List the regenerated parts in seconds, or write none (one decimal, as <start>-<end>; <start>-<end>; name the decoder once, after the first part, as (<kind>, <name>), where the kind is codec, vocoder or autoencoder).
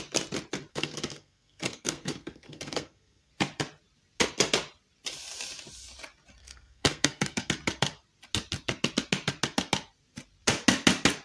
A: 0.7-3.3 (codec, SNAC); 6.4-7.5